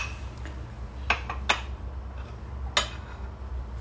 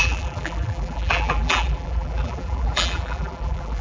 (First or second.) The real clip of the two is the first